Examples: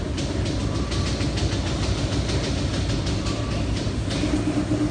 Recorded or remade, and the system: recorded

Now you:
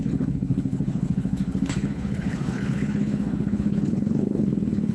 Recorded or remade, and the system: remade, codec, HILCodec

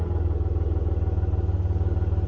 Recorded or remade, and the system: recorded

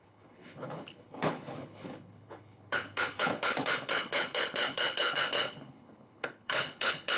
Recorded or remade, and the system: remade, codec, HILCodec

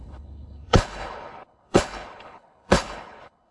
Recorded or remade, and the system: remade, codec, HILCodec